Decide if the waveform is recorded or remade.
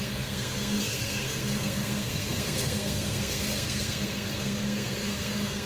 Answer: remade